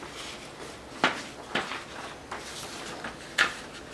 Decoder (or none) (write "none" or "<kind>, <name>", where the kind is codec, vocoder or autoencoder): none